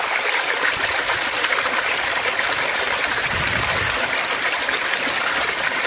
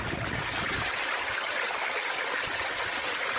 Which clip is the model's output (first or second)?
first